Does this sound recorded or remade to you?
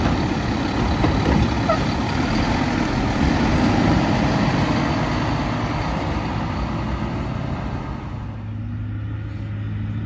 recorded